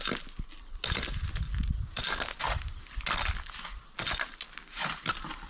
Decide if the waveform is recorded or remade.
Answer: recorded